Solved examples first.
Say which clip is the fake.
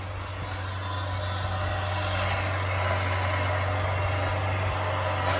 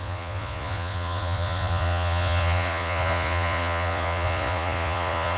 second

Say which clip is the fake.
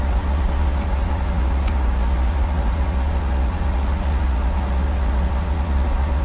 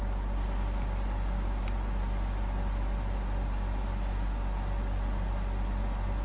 first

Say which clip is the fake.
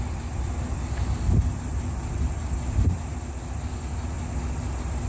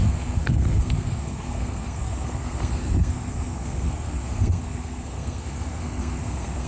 second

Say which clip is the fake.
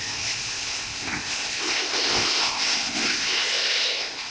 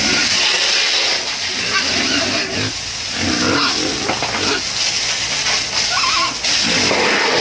first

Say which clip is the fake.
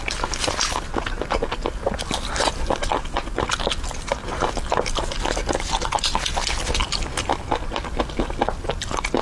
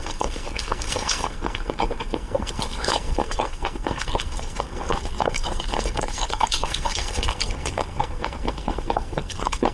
second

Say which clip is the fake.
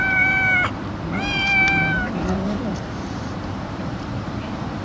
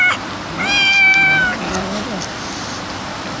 first